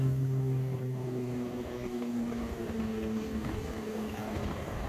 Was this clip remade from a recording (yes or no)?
yes